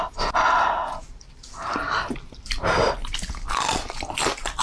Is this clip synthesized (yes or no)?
yes